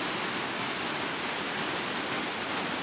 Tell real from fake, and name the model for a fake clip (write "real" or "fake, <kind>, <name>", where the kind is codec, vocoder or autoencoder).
real